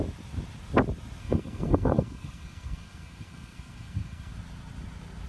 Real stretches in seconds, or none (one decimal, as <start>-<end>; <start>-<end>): 0.0-1.2; 4.3-5.3